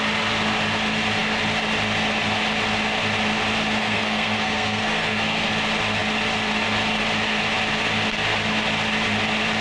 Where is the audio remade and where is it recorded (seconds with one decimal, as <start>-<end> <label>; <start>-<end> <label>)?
0.0-3.8 recorded; 3.8-5.5 remade; 5.5-9.6 recorded